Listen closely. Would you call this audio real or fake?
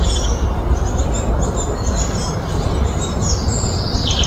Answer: real